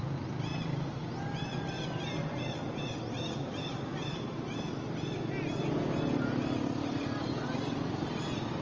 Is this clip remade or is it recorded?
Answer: recorded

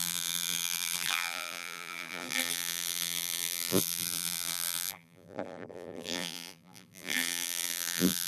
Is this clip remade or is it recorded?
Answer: remade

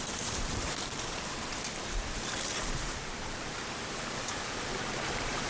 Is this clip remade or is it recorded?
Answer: remade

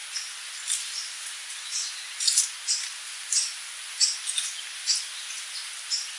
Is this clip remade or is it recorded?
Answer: recorded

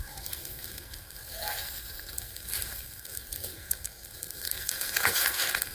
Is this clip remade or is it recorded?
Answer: remade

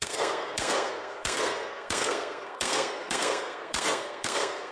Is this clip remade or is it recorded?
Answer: remade